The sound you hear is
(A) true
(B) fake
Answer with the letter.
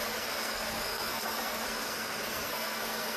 B